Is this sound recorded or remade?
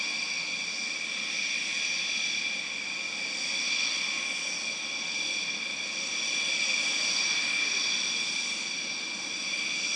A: recorded